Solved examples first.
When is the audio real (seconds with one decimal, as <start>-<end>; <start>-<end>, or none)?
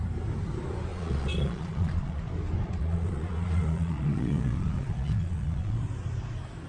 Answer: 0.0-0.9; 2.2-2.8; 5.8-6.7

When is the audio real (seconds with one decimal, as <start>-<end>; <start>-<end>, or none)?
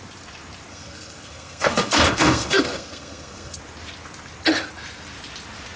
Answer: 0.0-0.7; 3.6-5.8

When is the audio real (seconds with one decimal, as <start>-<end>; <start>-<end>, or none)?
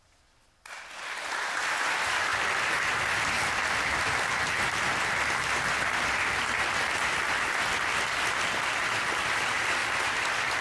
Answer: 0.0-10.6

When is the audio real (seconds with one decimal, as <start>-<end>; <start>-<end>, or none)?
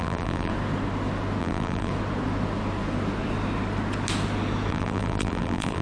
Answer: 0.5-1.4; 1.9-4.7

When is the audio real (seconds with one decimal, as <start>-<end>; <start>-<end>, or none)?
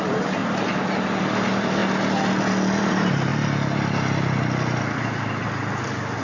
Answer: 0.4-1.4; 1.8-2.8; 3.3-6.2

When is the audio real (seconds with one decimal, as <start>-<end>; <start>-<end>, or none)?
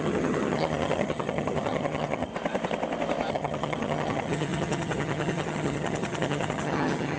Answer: 2.3-3.3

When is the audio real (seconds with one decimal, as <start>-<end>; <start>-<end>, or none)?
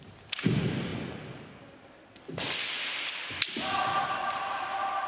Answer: 0.9-4.0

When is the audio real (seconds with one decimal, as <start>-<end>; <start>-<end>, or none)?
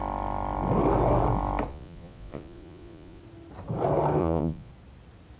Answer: 0.0-1.7; 3.2-4.2; 4.7-5.4